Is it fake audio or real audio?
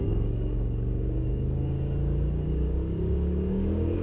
fake